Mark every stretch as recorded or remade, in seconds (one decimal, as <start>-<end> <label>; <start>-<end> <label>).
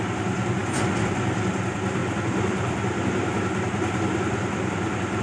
0.0-5.2 recorded